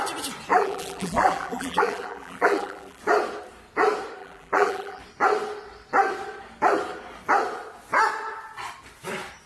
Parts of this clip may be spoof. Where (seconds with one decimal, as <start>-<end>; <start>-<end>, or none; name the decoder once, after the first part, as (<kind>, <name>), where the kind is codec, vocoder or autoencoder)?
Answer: 0.5-3.0 (vocoder, BigVGAN v2); 4.2-5.0